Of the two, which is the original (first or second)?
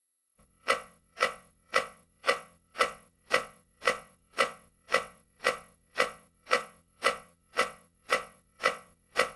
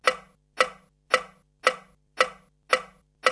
second